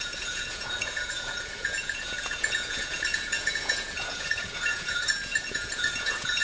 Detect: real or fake fake